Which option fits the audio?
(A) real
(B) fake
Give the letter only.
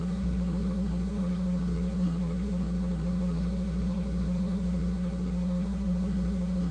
B